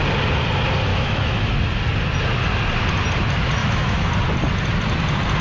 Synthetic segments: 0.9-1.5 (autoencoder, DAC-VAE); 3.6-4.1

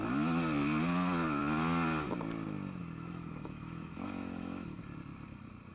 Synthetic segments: 2.8-4.8 (autoencoder, DAC-VAE)

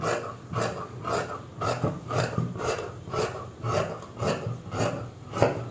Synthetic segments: 1.5-3.8 (vocoder, BigVGAN v2)

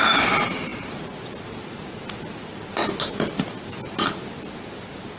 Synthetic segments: none